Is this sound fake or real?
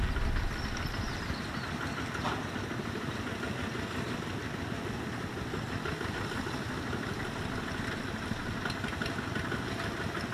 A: real